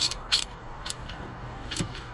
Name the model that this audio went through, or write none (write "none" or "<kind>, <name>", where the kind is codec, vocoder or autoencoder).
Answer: codec, DAC